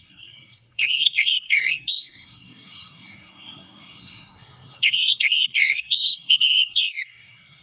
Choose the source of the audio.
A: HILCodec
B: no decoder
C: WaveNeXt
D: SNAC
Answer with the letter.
D